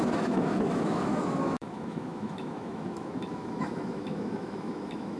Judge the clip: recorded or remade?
remade